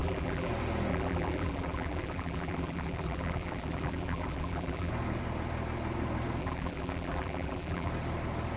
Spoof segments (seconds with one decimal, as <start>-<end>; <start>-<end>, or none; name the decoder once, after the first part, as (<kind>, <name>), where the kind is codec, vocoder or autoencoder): 0.0-0.5 (vocoder, BigVGAN v2); 0.9-4.9; 6.4-7.9